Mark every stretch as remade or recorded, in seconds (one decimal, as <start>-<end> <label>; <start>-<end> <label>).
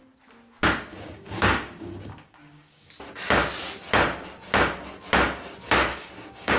0.0-0.9 recorded; 0.9-2.9 remade; 2.9-5.9 recorded; 5.9-6.6 remade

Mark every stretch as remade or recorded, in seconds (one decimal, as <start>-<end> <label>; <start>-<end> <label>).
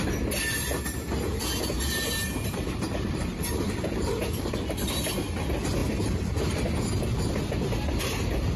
0.0-2.2 recorded; 2.2-4.5 remade; 4.5-5.8 recorded; 5.8-6.4 remade; 6.4-8.6 recorded